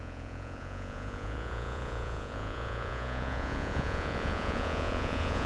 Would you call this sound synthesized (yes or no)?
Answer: yes